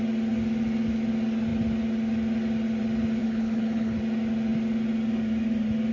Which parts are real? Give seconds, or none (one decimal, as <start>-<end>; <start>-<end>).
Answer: 0.0-3.2; 4.0-5.9